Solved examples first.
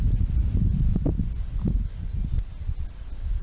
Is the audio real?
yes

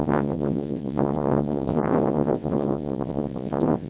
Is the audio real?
no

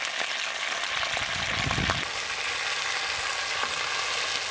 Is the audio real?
yes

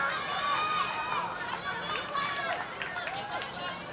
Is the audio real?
yes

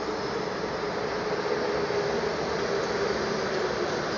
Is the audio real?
yes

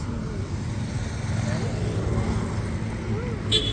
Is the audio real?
yes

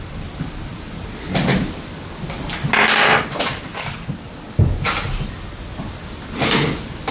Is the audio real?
yes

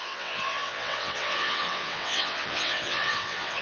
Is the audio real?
no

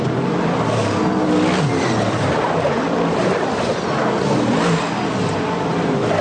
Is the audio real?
yes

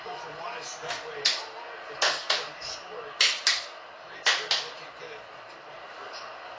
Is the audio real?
yes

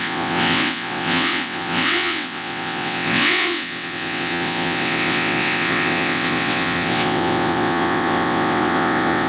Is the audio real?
no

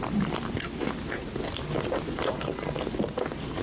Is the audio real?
yes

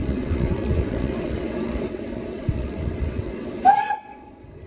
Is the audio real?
no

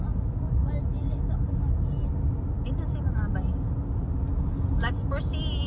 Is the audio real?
yes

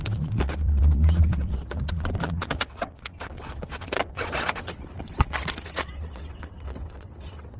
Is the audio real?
no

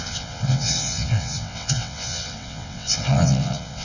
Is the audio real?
no